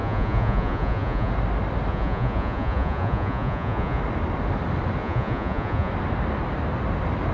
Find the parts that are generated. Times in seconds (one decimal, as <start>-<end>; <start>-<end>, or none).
0.0-1.3; 1.9-4.0; 5.0-5.9